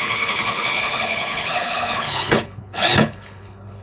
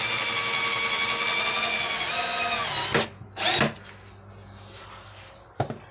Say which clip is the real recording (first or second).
second